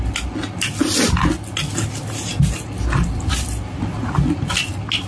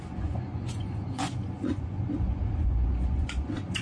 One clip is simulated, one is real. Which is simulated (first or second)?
second